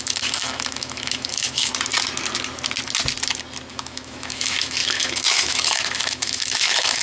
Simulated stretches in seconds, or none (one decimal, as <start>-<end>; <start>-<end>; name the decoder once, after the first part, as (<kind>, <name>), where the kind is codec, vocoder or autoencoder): 0.0-1.7 (autoencoder, DAC-VAE); 3.7-7.0